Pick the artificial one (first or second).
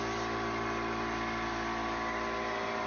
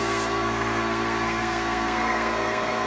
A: second